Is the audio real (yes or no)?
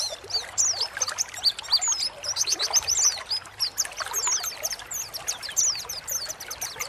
yes